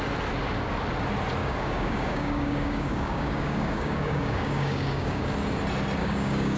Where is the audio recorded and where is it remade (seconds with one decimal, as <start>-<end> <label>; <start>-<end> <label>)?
0.0-1.4 recorded; 1.4-5.2 remade; 5.2-6.0 recorded; 6.0-6.6 remade

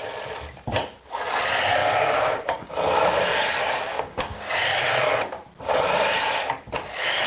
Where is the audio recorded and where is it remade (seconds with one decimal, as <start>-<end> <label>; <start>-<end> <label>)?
0.0-1.8 recorded; 1.8-2.7 remade; 2.7-3.9 recorded; 3.9-4.5 remade; 4.5-7.3 recorded

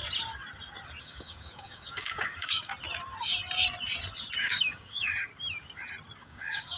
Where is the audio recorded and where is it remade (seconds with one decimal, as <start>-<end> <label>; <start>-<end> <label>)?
0.0-1.0 recorded; 1.0-2.7 remade; 2.7-4.4 recorded; 4.4-5.3 remade; 5.3-6.2 recorded; 6.2-6.8 remade

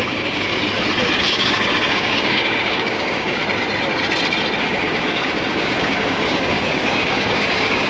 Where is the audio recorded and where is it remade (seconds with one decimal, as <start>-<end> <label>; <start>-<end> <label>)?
0.0-0.5 remade; 0.5-1.2 recorded; 1.2-3.4 remade; 3.4-4.6 recorded; 4.6-7.9 remade